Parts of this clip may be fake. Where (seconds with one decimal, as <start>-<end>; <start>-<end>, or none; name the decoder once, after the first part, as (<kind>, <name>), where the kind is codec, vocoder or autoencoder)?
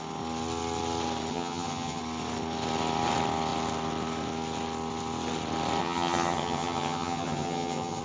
1.3-2.0 (vocoder, HiFi-GAN); 5.8-8.0